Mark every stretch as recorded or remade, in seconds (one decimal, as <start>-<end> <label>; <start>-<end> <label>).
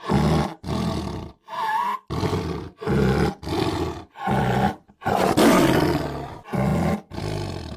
0.0-7.8 recorded